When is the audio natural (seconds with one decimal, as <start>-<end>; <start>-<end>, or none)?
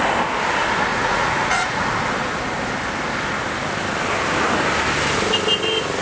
0.0-0.9; 1.8-6.0